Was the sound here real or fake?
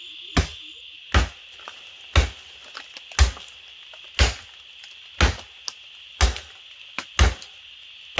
real